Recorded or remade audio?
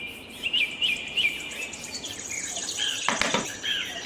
remade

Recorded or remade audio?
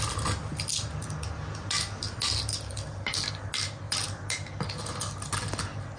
recorded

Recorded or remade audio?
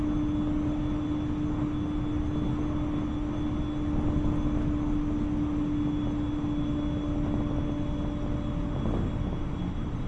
recorded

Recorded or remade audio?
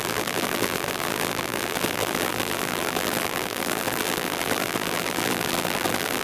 remade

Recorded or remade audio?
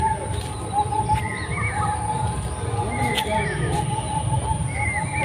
recorded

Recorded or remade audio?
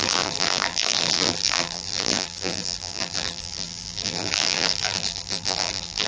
remade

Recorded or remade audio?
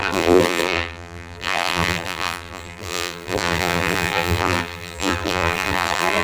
remade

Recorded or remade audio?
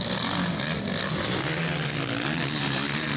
recorded